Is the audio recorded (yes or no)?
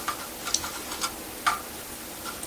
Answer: yes